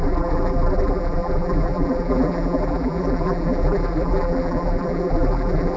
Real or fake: fake